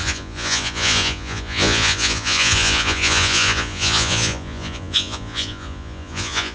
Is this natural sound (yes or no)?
no